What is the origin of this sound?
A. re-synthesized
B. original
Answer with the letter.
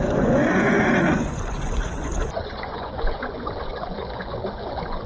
A